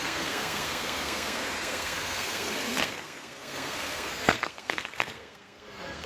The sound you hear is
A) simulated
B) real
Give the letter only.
A